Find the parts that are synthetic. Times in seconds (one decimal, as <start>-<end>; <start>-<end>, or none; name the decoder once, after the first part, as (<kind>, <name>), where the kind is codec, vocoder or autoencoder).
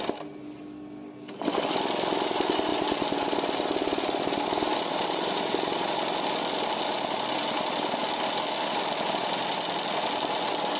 4.9-5.9 (vocoder, BigVGAN v2)